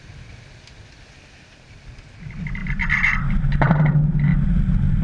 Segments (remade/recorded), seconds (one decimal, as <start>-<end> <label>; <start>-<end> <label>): 0.0-5.0 recorded